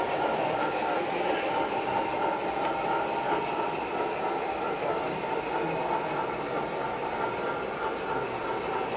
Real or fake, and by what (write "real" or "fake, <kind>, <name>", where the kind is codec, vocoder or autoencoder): real